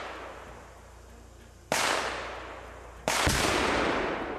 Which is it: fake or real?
real